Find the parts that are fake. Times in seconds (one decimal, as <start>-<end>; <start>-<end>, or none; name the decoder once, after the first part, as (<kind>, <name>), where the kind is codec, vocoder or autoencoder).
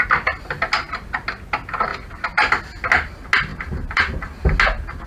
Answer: 3.5-4.5 (vocoder, BigVGAN v2)